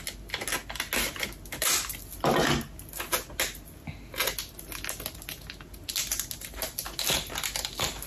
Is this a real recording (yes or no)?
yes